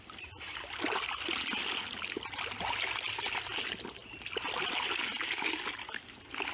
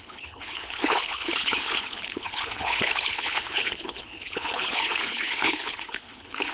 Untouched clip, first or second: first